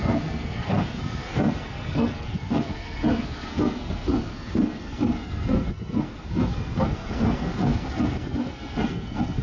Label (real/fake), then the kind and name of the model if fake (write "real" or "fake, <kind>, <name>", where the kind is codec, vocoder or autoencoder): fake, codec, SNAC